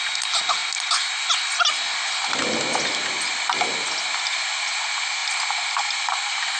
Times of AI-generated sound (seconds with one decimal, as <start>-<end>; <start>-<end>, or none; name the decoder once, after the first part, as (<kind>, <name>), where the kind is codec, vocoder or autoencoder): none